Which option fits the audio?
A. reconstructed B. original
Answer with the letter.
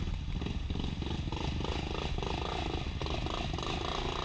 B